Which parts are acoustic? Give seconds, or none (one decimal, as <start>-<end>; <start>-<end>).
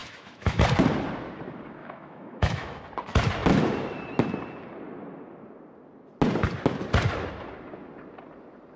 0.6-1.8; 2.8-8.8